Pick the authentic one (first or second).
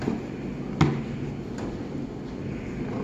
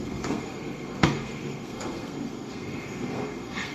first